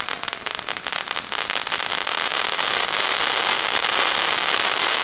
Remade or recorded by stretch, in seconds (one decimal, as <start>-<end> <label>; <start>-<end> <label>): 0.0-5.0 recorded